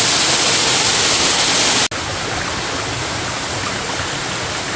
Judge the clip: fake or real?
real